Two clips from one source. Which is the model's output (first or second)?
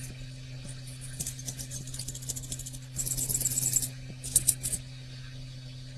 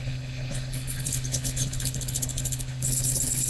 second